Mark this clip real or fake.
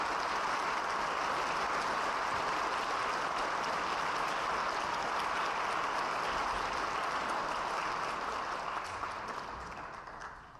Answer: real